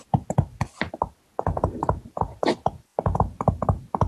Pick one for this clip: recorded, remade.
recorded